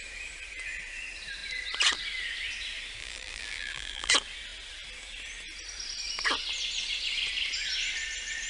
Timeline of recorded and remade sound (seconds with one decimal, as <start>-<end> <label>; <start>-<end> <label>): 0.0-3.0 recorded; 3.0-4.1 remade; 4.1-8.5 recorded